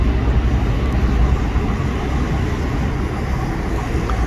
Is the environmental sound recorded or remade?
recorded